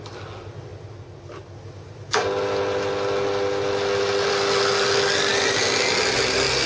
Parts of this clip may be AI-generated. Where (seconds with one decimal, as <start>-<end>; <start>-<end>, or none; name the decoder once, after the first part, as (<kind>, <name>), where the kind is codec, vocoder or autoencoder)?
none